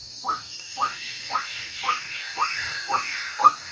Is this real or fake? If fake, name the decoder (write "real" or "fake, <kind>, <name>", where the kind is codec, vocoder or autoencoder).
fake, codec, DAC